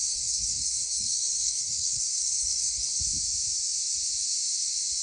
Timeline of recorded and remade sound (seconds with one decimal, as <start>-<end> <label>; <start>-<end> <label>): 0.0-3.0 remade; 3.0-5.0 recorded